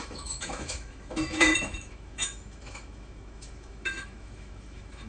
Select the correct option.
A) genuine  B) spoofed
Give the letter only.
B